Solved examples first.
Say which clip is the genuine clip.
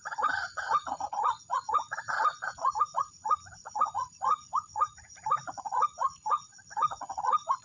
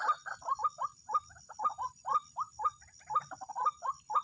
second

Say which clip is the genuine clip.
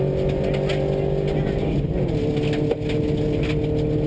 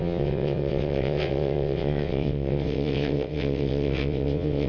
first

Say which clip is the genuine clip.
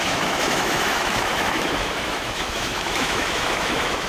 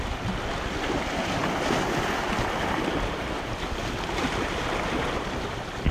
second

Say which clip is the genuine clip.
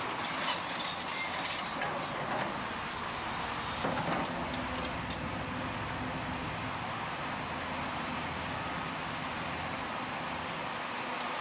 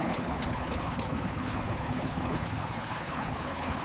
first